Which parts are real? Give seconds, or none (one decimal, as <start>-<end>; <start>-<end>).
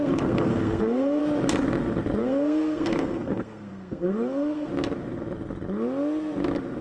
1.2-2.2; 4.7-6.8